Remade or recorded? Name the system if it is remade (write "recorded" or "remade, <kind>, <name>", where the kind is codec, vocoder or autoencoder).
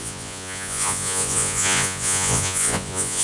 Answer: remade, vocoder, Vocos